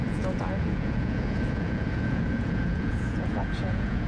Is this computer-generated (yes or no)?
yes